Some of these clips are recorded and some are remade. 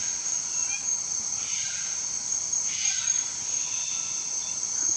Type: recorded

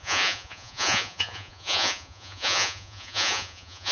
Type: remade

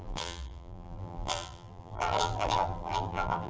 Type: remade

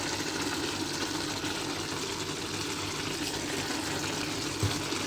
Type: recorded